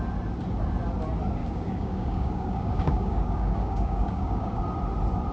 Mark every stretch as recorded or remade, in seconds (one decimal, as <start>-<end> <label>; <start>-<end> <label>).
0.0-1.4 recorded; 1.4-4.6 remade; 4.6-5.3 recorded